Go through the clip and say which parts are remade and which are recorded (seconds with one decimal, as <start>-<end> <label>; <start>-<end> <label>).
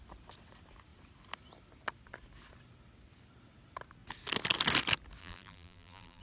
0.0-5.2 recorded; 5.2-6.2 remade